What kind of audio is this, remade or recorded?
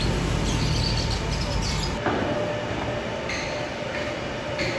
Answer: recorded